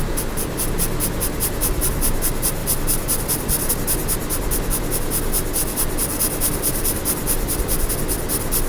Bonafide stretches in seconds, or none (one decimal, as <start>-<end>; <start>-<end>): 0.0-2.6; 3.7-5.6; 7.9-8.7